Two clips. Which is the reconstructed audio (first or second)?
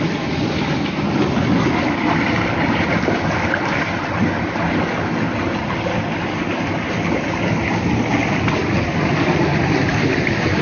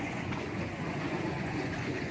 second